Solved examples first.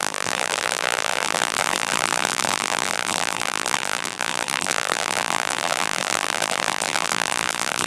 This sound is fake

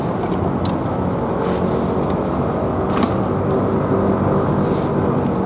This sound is real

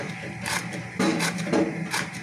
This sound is fake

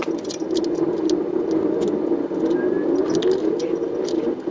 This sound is real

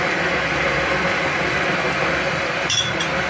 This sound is fake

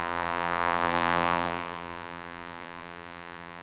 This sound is fake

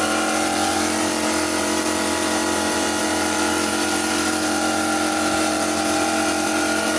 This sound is fake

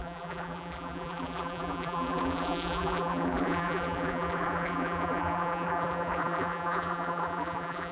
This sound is fake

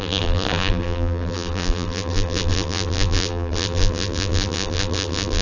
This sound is fake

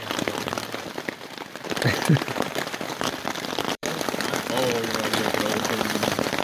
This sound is fake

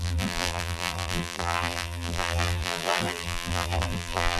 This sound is fake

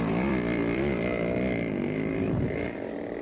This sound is fake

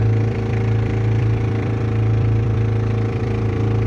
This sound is fake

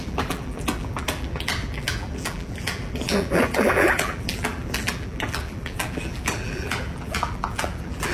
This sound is fake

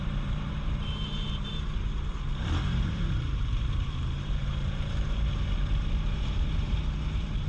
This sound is fake